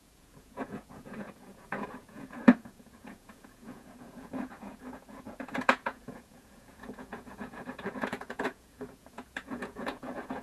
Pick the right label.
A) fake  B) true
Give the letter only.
A